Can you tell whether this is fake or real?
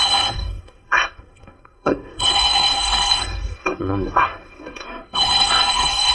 fake